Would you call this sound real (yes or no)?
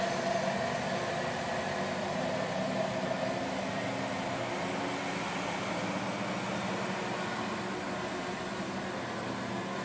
yes